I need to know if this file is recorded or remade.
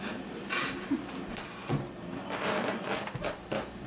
remade